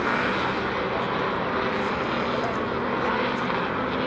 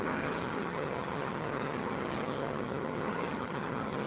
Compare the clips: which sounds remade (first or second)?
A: second